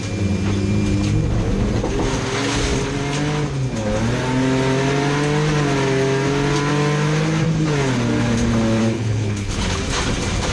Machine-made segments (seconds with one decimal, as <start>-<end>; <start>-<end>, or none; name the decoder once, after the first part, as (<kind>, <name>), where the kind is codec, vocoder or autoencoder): 8.8-9.8 (codec, HILCodec)